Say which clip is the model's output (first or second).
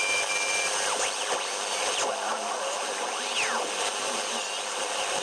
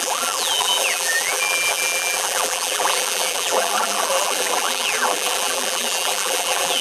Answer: second